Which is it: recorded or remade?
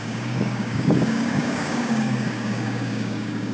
remade